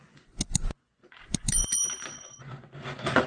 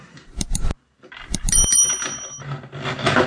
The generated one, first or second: first